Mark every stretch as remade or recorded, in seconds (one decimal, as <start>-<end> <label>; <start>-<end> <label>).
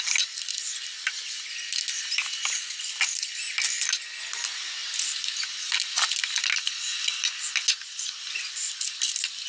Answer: 0.0-9.5 recorded